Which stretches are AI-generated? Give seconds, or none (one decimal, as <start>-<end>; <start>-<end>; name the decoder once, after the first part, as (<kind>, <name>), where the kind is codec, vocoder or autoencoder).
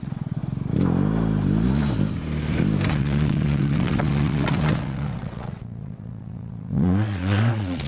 0.0-0.4 (vocoder, WaveNeXt); 2.9-7.9